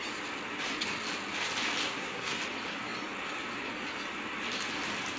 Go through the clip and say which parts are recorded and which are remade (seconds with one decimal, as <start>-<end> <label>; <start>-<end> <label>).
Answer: 0.0-1.8 recorded; 1.8-2.4 remade; 2.4-5.2 recorded